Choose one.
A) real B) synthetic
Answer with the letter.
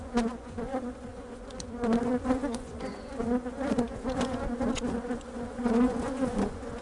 B